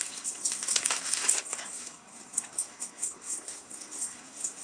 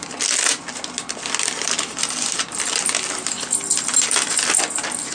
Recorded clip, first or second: second